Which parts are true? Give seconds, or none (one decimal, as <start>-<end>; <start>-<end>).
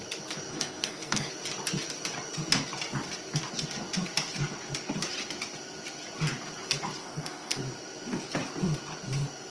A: 0.0-0.5; 1.3-7.0; 7.6-9.5